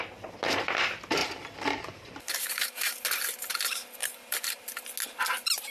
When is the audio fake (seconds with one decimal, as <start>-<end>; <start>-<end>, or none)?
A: 1.2-3.0; 4.0-4.6